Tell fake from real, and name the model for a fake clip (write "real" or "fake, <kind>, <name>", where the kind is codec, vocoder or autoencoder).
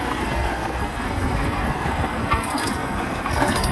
fake, codec, SNAC